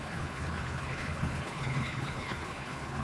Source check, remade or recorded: remade